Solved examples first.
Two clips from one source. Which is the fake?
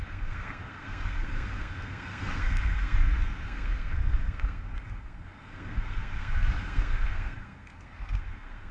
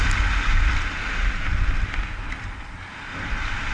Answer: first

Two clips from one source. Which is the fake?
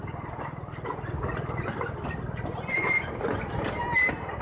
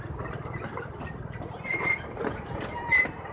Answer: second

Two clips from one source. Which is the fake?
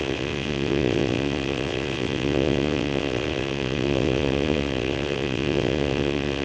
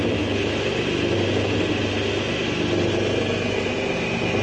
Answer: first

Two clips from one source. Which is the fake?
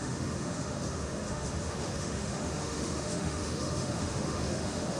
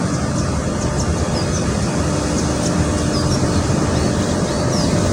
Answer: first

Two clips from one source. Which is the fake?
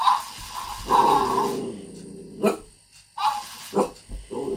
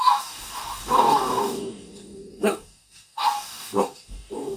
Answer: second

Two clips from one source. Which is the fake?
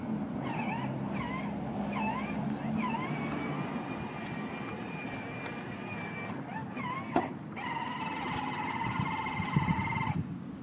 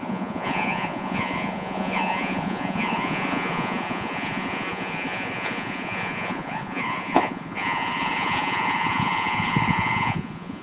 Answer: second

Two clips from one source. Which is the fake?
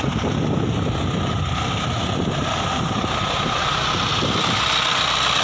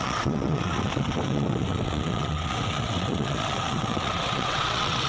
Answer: second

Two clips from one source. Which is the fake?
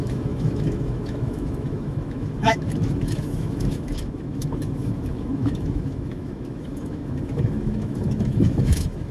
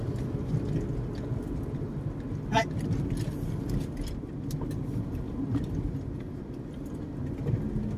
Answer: first